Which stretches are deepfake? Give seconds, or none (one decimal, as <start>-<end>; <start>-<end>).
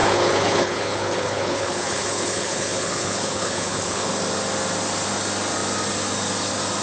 0.0-4.1